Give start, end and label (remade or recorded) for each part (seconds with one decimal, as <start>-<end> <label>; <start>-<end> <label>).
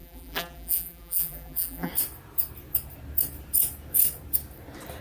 0.0-1.9 remade; 1.9-5.0 recorded